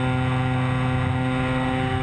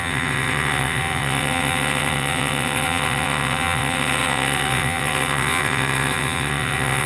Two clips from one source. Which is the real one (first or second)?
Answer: first